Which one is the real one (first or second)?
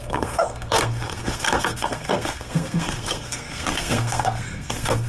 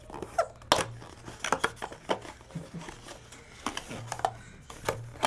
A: second